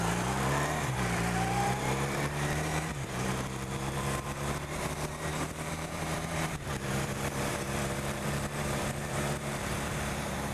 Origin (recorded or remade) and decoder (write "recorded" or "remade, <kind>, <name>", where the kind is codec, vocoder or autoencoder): remade, vocoder, BigVGAN v2